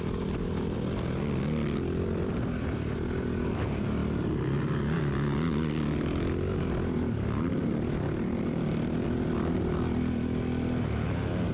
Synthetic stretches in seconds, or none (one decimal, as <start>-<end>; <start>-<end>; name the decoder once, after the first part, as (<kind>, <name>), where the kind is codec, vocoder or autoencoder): none